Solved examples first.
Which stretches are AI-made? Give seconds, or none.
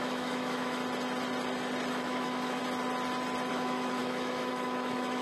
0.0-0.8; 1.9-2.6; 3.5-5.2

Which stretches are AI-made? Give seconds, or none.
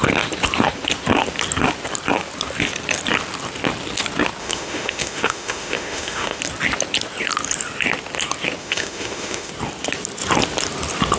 4.4-6.4; 8.6-9.5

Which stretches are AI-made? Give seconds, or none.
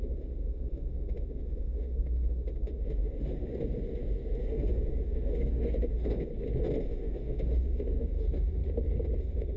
0.0-3.5; 4.4-6.3; 6.8-8.6; 9.2-9.6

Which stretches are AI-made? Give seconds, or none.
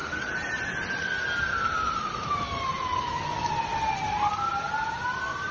1.5-3.2